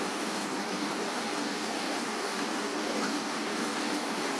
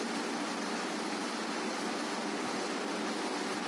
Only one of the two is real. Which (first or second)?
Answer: second